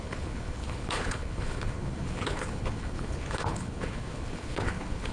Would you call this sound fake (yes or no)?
yes